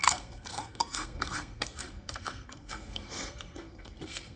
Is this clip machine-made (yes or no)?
yes